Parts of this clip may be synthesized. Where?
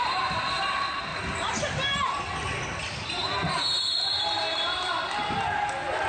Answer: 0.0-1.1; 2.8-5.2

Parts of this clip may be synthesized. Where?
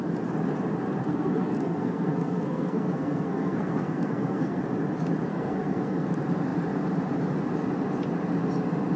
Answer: 1.0-4.6; 5.3-6.1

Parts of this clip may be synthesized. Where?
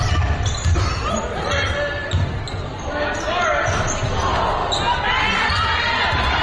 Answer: none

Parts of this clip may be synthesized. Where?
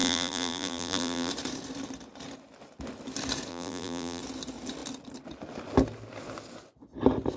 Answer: 0.0-1.3; 3.5-4.2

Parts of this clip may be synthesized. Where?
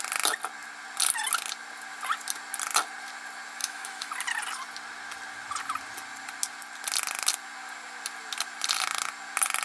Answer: 3.6-4.1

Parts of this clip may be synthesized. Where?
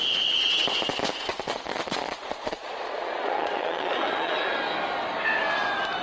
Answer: 1.3-4.6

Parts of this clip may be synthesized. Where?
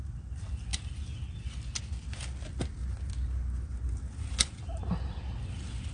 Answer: none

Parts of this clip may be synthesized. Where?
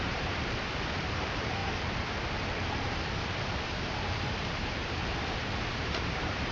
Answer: 0.0-1.6; 3.6-5.0; 5.6-6.5